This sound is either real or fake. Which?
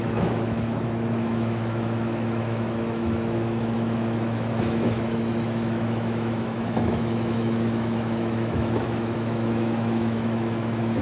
fake